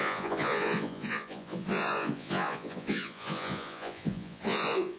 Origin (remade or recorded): remade